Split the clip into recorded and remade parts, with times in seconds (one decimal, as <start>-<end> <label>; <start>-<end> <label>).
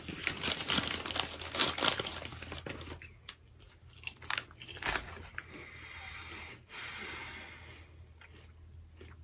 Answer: 0.0-9.2 recorded